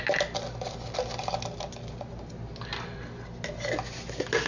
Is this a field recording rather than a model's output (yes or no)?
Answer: yes